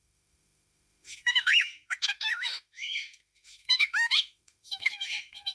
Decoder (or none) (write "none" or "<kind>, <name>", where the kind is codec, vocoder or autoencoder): autoencoder, DAC-VAE